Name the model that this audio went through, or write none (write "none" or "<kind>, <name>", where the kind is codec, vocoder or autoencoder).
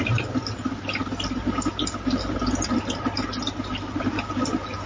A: none